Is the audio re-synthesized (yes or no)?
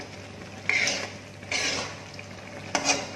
no